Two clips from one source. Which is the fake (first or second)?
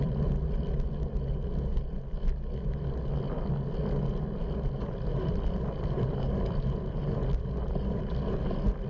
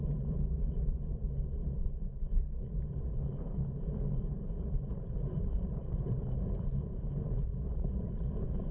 second